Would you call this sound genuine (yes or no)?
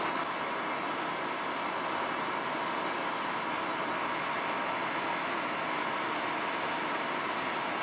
yes